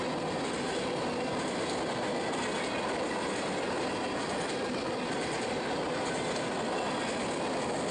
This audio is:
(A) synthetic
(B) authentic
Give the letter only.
B